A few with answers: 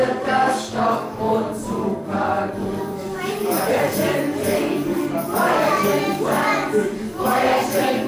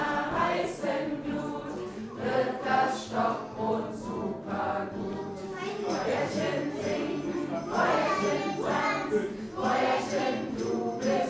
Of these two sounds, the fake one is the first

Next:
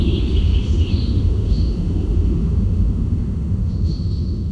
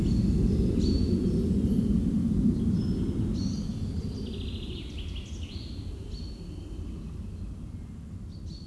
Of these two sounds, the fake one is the first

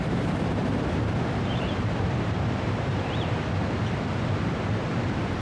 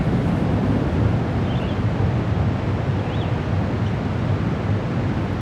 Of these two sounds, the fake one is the first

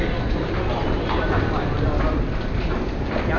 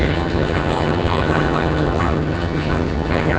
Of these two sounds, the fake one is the second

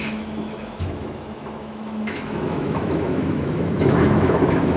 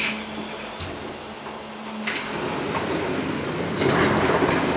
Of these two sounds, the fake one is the first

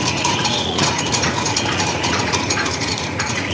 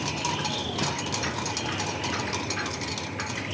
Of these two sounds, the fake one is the first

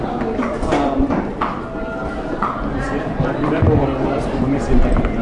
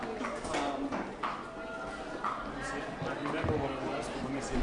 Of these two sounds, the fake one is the first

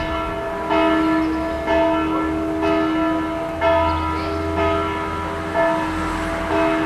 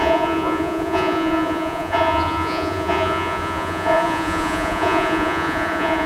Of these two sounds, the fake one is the second